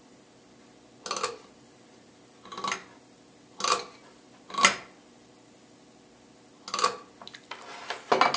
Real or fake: real